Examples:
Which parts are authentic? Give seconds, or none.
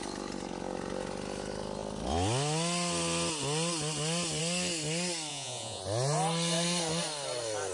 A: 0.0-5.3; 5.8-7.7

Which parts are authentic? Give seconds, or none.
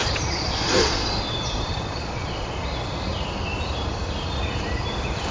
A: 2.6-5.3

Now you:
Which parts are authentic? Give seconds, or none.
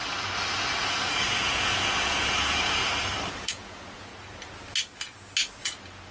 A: 0.0-0.9; 2.8-3.5; 4.1-5.6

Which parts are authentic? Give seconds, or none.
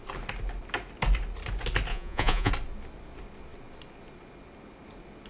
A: 0.0-1.9; 2.5-5.3